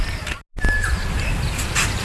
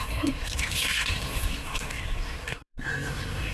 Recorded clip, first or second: first